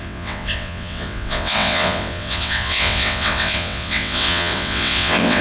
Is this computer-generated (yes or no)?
yes